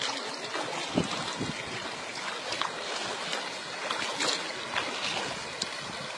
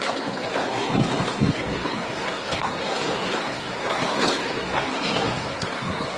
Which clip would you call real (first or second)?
first